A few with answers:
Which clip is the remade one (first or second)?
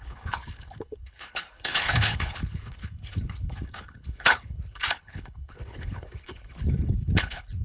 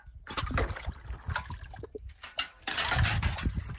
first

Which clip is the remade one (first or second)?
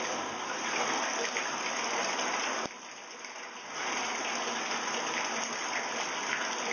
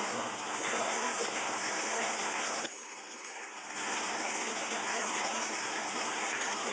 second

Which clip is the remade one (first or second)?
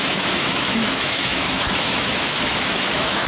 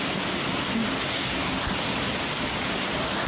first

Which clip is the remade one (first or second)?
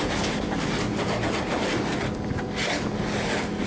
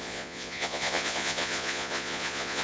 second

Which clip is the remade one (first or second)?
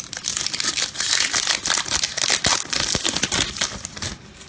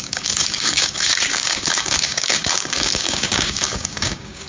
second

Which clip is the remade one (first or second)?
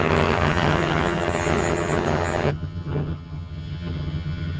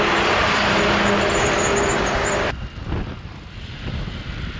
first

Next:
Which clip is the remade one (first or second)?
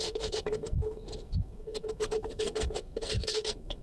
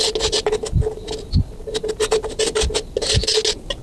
first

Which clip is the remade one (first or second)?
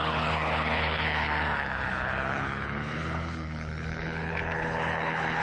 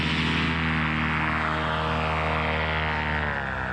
first